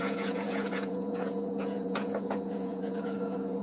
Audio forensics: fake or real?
fake